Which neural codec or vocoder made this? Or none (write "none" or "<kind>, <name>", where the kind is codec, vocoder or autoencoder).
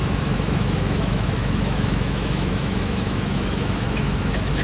autoencoder, DAC-VAE